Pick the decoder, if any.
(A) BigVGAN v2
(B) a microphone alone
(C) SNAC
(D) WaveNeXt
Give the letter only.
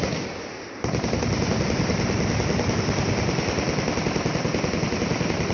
B